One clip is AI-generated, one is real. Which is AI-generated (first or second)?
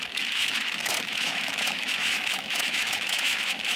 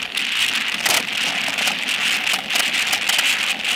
first